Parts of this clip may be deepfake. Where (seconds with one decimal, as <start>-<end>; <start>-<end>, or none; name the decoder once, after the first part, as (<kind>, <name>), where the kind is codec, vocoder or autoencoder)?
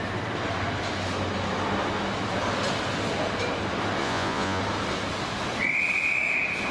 4.0-4.6 (vocoder, Vocos)